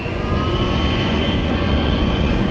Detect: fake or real fake